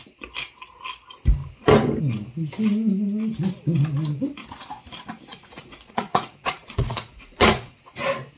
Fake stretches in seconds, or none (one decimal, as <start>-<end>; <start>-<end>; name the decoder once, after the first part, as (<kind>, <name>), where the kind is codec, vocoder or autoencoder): 5.3-7.8 (vocoder, Vocos)